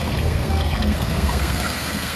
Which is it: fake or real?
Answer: fake